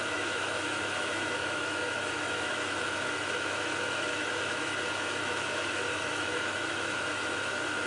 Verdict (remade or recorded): remade